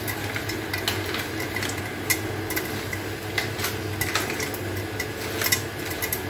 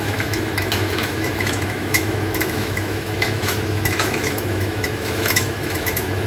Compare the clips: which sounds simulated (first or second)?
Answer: second